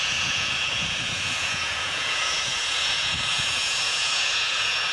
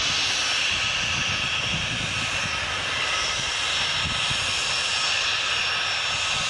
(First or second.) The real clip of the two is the second